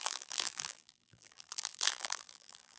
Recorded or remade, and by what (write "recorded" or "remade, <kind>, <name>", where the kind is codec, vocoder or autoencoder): remade, vocoder, BigVGAN v2